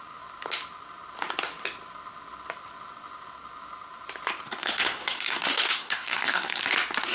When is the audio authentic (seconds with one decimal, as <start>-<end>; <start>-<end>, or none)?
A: 0.0-4.6; 6.6-7.1